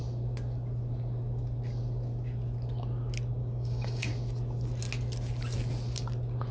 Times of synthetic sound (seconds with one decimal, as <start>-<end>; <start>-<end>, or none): 3.4-4.1